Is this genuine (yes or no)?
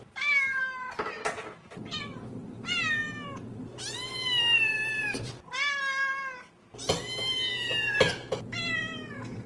yes